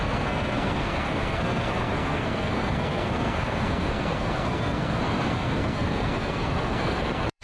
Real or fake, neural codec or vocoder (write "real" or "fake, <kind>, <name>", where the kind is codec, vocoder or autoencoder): fake, codec, SNAC